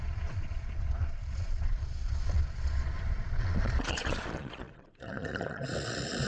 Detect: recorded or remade remade